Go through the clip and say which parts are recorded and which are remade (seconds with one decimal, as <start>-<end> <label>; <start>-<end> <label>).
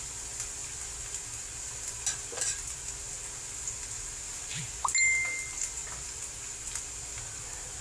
0.0-7.8 recorded